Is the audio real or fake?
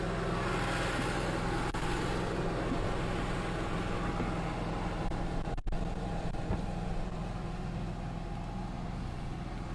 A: real